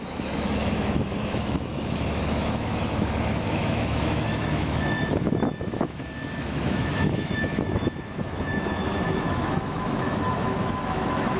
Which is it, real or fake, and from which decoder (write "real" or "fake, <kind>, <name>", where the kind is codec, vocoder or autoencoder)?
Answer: fake, autoencoder, DAC-VAE